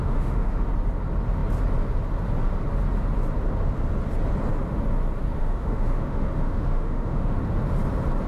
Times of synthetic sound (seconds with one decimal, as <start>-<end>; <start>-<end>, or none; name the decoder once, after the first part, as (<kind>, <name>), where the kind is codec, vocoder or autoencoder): 0.0-0.6 (autoencoder, DAC-VAE); 5.4-7.4

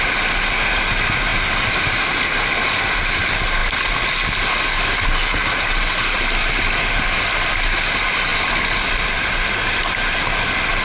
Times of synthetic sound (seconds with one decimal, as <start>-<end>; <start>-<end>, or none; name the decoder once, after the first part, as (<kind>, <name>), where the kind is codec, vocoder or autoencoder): none

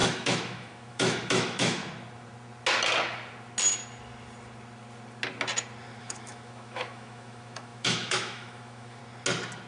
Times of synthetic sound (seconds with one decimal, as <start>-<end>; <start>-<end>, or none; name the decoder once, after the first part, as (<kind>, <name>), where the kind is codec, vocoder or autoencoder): 0.0-1.8 (autoencoder, DAC-VAE); 6.0-9.0

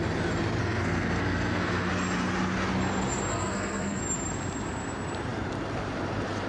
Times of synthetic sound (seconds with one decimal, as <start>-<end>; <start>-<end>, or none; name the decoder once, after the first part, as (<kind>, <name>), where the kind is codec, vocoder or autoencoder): 0.6-1.9 (codec, SNAC); 3.3-4.0

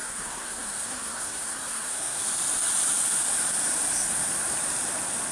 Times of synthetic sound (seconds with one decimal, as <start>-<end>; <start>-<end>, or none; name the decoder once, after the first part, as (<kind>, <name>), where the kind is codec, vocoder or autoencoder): 0.0-2.2 (codec, SNAC)

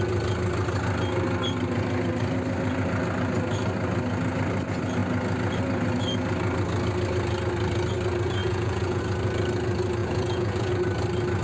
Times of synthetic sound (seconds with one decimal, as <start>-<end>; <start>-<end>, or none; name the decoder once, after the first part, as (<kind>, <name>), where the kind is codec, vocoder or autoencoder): 8.4-9.0 (vocoder, Vocos); 10.0-10.7